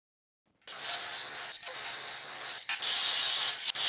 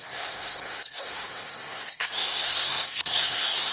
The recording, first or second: first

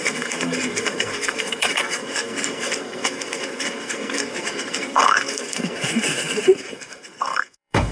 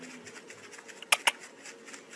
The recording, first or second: second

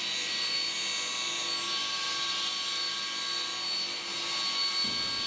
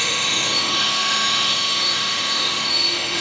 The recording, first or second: first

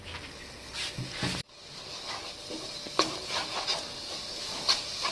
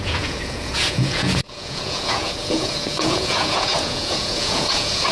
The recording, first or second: first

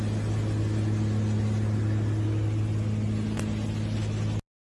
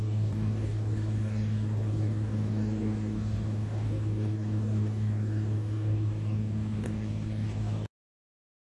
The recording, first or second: first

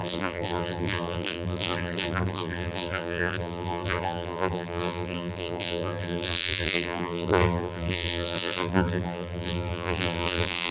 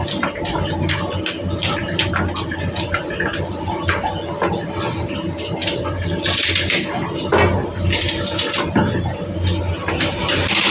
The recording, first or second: second